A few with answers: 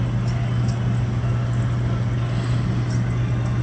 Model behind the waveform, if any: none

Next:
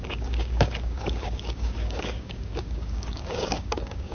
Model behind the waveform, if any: codec, DAC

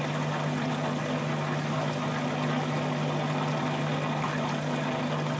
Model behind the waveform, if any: none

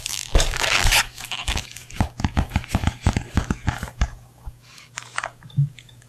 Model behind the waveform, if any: codec, DAC